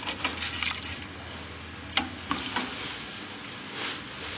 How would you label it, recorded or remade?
recorded